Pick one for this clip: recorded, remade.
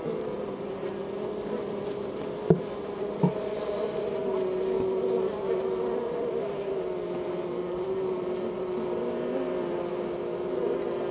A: recorded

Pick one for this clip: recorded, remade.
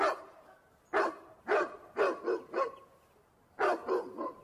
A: recorded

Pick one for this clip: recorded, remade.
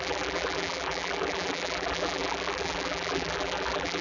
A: remade